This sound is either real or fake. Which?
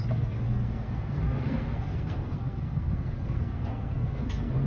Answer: fake